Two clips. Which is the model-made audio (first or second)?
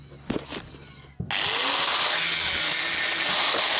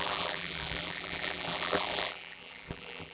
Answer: second